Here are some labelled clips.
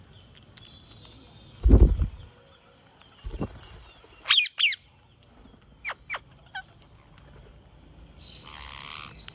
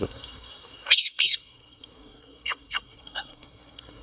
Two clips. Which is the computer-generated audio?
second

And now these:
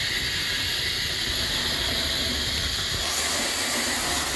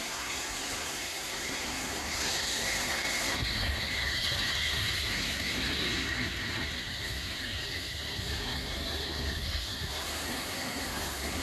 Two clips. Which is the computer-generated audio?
second